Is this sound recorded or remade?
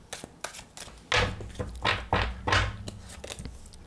recorded